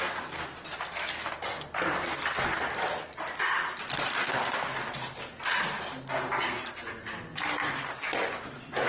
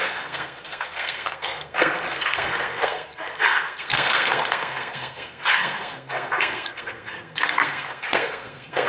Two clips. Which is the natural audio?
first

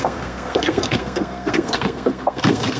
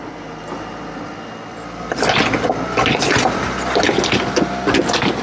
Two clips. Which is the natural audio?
second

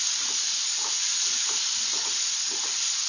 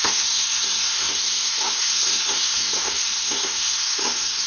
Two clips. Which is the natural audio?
first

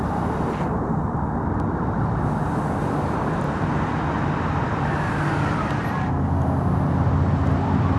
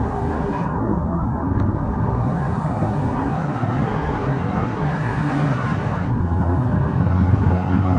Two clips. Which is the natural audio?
first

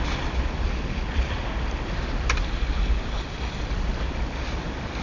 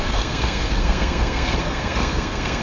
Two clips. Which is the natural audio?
first